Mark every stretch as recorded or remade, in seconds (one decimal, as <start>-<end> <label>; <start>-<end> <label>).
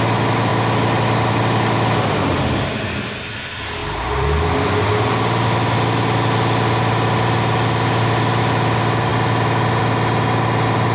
0.0-10.9 recorded